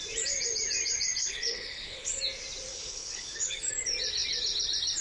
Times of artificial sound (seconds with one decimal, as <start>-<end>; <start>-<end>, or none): 1.2-2.2; 2.7-3.7